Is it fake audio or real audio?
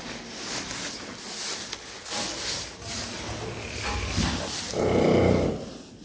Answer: real